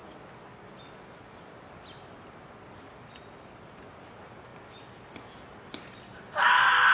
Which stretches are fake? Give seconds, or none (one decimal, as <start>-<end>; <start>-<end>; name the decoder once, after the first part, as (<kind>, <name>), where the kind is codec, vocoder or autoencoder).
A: none